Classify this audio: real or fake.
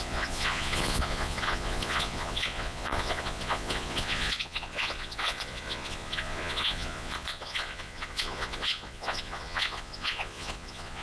fake